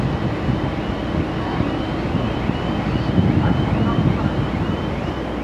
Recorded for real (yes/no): yes